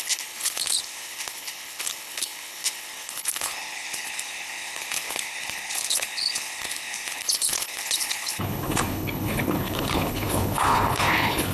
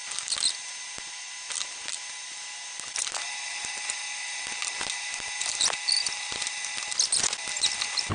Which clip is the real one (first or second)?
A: second